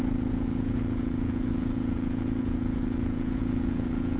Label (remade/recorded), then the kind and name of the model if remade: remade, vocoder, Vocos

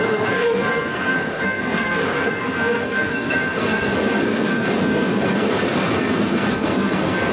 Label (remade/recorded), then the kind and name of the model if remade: remade, codec, SNAC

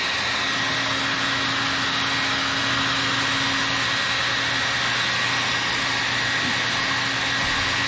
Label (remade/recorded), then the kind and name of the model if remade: recorded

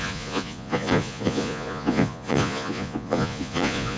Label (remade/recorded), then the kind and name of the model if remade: remade, vocoder, Vocos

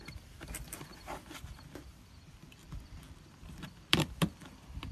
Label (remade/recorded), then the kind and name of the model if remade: remade, vocoder, BigVGAN v2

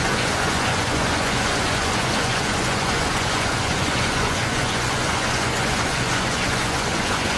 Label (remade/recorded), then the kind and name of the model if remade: remade, vocoder, Vocos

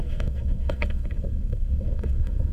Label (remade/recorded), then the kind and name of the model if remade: remade, codec, SNAC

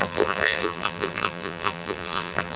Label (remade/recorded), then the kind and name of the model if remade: remade, vocoder, BigVGAN v2